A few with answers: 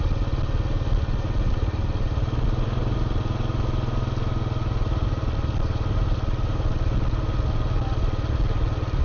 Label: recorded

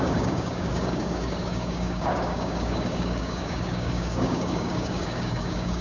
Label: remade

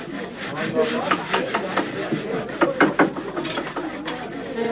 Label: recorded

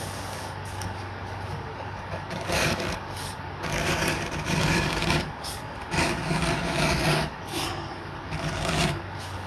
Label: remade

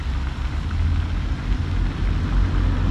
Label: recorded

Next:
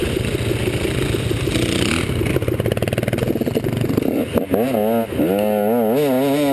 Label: recorded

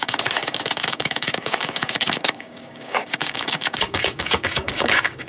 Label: remade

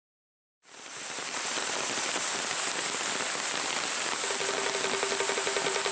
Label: recorded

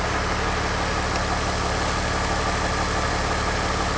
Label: recorded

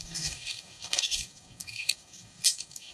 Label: remade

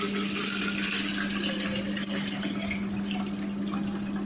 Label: recorded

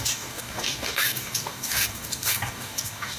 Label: remade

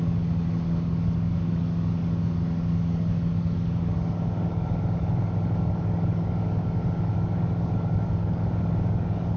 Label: remade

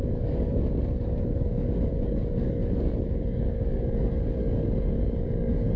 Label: remade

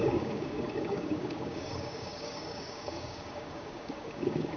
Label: remade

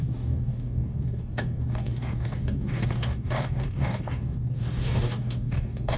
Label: remade